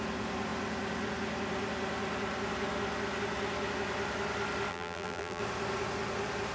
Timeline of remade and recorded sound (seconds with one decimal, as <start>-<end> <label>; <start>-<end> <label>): 0.0-4.7 recorded; 4.7-5.4 remade; 5.4-6.5 recorded